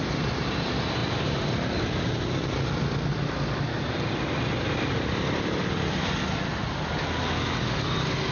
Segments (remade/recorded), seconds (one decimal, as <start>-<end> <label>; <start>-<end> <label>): 0.0-8.3 recorded